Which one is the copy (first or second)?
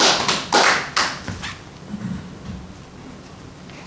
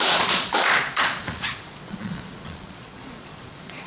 second